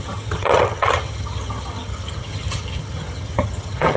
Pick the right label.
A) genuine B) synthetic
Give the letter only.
B